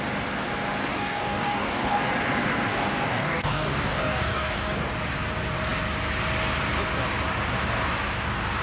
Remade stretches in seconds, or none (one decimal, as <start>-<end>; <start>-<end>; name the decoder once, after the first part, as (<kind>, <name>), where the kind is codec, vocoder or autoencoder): 0.8-2.0 (codec, DAC); 2.7-4.9